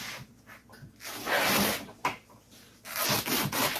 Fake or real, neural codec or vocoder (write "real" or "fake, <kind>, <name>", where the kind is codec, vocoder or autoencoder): real